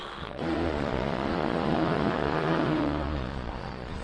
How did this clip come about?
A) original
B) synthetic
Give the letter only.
B